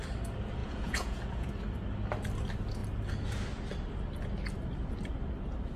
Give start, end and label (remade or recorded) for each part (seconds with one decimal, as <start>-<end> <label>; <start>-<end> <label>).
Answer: 0.0-0.6 recorded; 0.6-1.5 remade; 1.5-5.8 recorded